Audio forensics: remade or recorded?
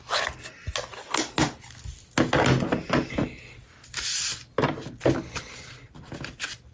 recorded